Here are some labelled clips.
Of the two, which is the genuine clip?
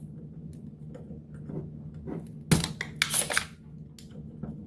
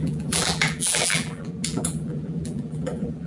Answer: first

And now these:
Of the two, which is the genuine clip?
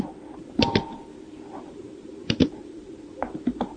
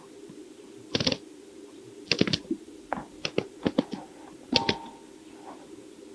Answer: second